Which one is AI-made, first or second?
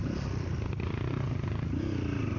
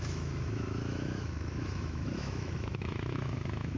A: second